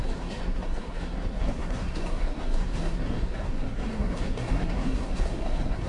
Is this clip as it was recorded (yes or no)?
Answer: no